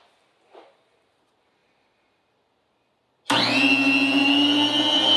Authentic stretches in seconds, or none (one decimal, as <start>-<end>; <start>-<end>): 0.0-5.2